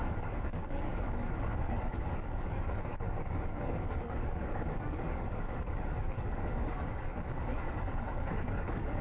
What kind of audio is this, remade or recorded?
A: remade